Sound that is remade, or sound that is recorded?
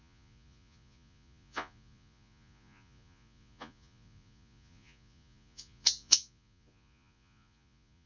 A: remade